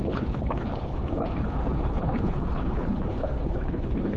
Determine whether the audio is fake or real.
fake